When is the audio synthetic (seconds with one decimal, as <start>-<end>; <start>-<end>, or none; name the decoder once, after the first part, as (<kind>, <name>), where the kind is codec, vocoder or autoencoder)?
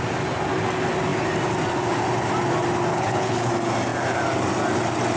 2.9-3.5 (codec, HILCodec)